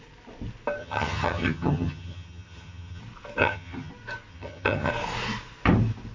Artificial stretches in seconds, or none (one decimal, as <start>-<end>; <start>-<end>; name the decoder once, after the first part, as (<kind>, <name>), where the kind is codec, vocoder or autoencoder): 0.8-3.0 (vocoder, HiFi-GAN); 3.4-3.9; 4.3-4.9